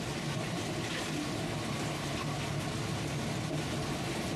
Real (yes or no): yes